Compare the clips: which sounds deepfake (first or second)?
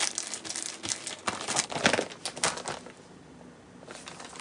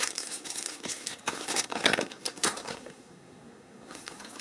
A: second